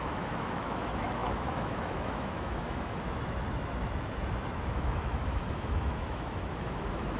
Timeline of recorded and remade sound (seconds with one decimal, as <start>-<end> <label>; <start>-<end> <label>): 0.0-7.2 remade